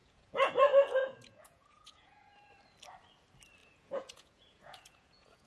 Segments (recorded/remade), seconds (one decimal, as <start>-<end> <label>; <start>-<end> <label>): 0.0-0.5 remade; 0.5-1.0 recorded; 1.0-2.5 remade; 2.5-3.6 recorded; 3.6-5.5 remade